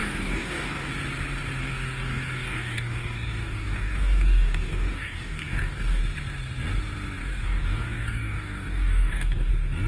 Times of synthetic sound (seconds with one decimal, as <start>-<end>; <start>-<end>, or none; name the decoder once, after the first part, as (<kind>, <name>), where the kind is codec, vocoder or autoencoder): 0.0-0.9 (codec, DAC); 1.6-6.0; 7.2-9.5